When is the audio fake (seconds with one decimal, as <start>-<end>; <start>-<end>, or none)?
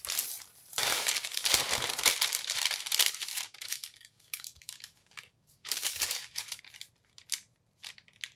0.8-1.5; 3.3-6.6